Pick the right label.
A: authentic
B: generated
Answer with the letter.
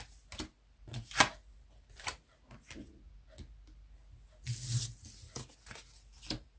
A